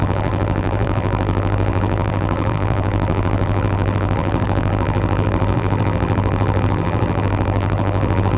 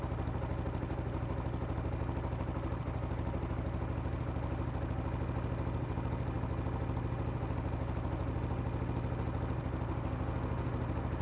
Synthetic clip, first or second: first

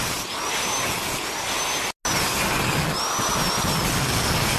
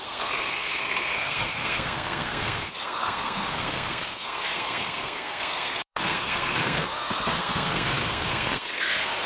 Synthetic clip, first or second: second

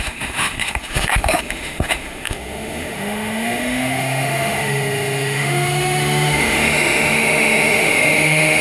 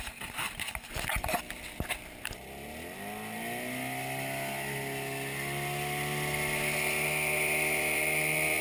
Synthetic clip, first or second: first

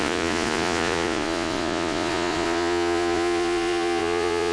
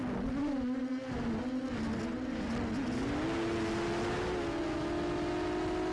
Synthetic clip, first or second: first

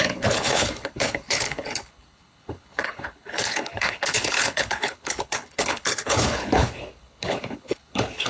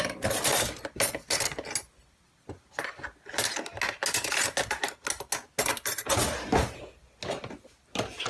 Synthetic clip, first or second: first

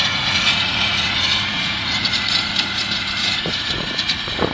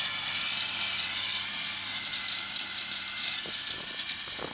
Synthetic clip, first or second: first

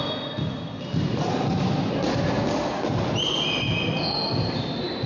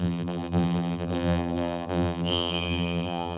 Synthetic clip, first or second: second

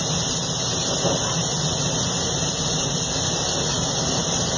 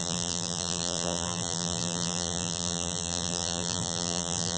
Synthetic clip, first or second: second